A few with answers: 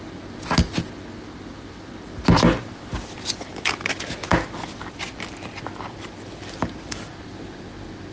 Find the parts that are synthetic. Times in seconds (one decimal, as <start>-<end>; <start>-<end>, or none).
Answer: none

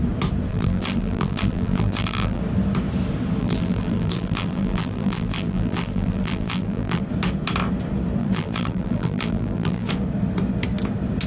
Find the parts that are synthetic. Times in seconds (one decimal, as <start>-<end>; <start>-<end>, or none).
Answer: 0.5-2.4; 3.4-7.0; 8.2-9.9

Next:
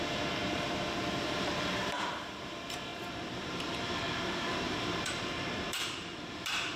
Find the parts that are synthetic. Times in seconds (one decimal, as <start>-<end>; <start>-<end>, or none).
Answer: 0.0-6.8

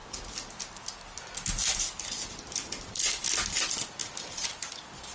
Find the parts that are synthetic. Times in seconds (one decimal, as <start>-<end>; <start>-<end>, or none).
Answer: none